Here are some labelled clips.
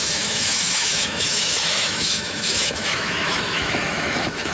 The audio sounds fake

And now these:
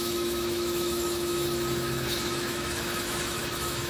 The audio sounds fake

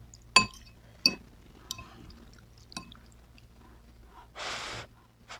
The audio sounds real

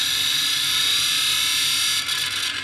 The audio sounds real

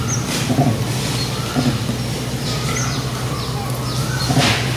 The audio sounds real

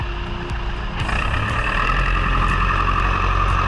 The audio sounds real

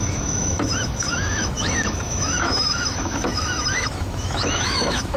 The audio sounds fake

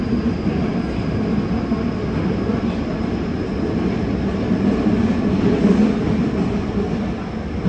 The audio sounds real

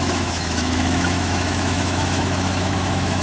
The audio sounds fake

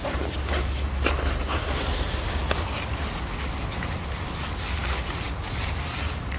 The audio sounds real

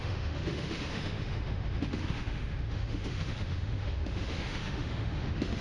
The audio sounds fake